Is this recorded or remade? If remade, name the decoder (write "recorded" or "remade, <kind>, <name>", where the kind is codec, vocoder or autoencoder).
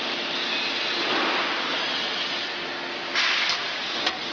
recorded